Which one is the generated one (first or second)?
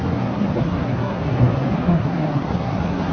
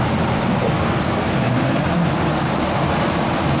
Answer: first